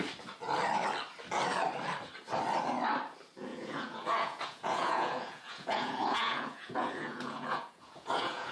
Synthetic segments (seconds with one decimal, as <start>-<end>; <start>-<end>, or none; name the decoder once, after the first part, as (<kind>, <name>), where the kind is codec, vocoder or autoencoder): 3.5-8.5 (vocoder, Vocos)